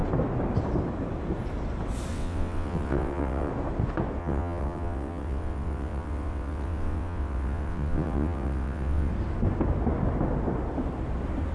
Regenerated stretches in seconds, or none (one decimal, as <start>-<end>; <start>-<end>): 2.1-3.5; 4.2-9.1